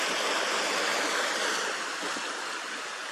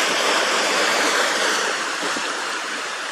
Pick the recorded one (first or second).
first